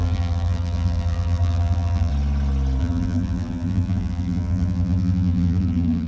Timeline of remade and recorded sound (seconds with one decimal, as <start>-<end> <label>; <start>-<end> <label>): 0.0-2.1 remade; 2.1-2.8 recorded; 2.8-6.1 remade